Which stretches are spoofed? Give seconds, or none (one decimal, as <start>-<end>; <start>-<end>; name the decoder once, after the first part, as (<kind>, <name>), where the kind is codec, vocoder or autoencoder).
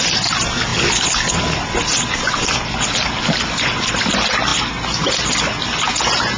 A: none